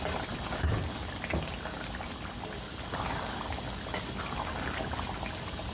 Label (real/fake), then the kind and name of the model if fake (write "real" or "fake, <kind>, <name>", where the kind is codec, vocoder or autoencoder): real